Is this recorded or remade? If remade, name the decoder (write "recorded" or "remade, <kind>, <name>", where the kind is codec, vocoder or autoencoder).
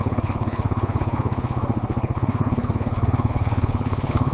remade, codec, HILCodec